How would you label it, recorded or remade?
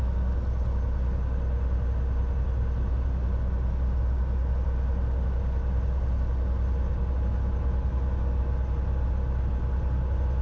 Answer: recorded